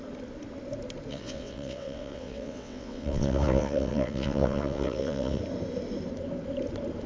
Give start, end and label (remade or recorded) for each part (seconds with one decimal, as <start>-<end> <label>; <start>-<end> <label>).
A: 0.0-1.1 recorded; 1.1-5.4 remade; 5.4-7.1 recorded